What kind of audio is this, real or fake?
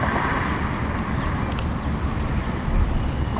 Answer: real